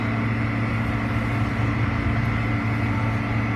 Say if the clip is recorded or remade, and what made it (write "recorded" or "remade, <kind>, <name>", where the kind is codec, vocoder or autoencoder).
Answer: recorded